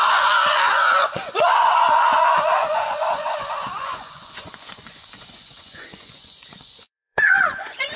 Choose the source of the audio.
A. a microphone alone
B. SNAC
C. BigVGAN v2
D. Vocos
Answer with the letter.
D